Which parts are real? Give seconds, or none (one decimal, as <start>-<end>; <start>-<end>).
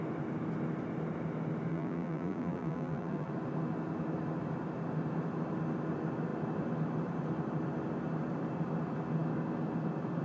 0.0-1.7; 3.3-10.2